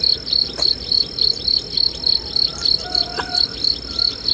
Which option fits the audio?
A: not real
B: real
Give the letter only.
B